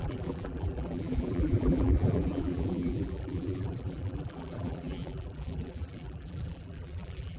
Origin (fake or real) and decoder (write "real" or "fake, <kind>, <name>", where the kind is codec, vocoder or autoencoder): fake, vocoder, BigVGAN v2